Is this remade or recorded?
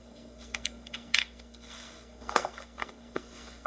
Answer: remade